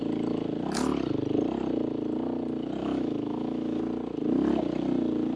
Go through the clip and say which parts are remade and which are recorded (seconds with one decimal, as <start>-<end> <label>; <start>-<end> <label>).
0.0-2.8 recorded; 2.8-3.8 remade; 3.8-5.4 recorded